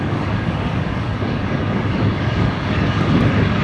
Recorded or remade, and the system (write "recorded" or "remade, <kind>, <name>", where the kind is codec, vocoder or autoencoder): remade, codec, DAC